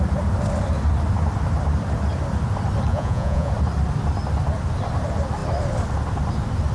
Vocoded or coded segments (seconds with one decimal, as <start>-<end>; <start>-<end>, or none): 2.9-3.5